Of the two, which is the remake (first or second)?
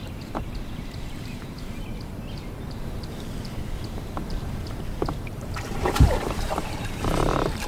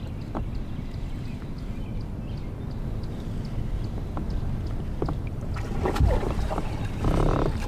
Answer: first